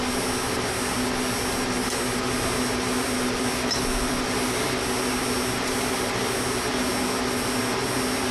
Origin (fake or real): real